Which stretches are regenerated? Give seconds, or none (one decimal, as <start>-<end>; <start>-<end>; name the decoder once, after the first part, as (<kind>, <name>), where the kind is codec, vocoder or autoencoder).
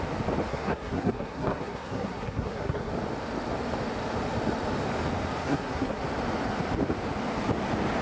0.5-2.9 (codec, SNAC); 5.4-6.0